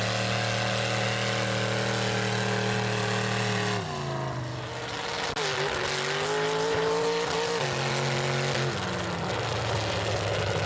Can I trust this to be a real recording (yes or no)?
yes